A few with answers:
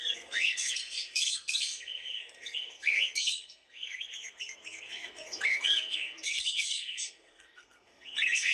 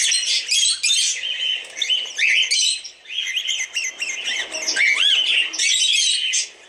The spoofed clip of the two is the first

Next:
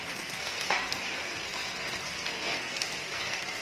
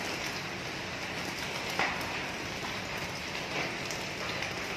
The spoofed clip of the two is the first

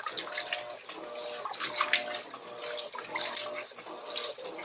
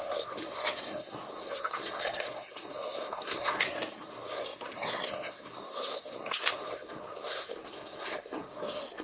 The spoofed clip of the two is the second